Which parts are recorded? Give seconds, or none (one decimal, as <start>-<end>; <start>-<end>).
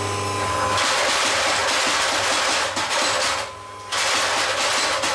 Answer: 0.0-5.1